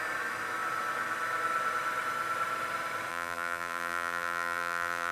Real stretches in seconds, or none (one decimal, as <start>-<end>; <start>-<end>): 0.0-3.1